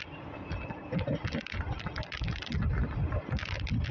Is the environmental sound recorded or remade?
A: recorded